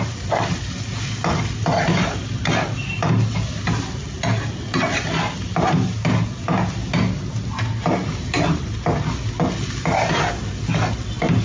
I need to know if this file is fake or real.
real